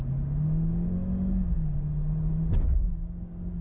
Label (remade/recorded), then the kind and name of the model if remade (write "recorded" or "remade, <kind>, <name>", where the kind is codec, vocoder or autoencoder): recorded